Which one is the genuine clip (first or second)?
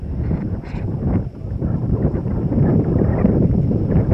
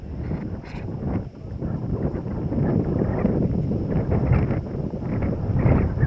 second